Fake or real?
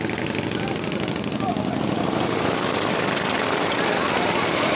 real